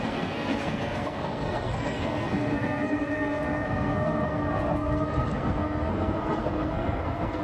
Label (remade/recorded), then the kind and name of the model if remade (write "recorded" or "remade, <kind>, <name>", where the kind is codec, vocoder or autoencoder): remade, codec, SNAC